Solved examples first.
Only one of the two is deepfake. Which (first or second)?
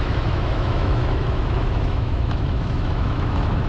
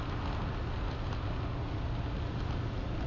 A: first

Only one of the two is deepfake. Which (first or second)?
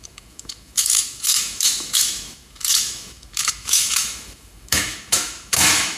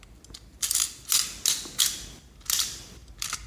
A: first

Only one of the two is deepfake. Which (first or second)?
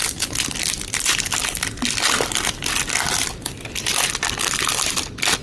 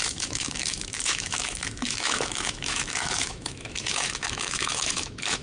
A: second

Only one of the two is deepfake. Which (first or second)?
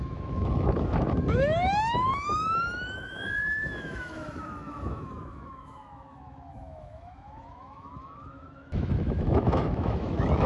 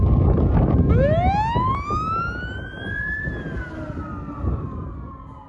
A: first